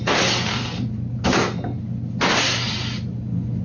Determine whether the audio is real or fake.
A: real